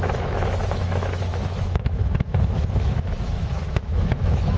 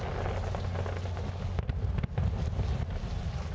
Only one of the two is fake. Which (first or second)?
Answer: first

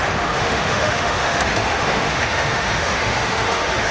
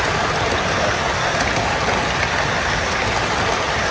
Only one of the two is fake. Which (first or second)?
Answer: first